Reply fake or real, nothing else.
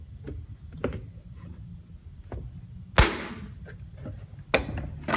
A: real